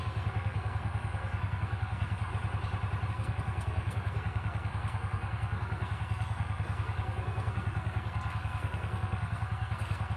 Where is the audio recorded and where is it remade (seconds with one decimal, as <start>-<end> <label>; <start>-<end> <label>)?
0.0-2.3 remade; 2.3-3.1 recorded; 3.1-10.2 remade